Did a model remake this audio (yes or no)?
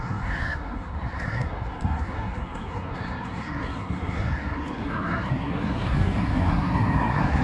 yes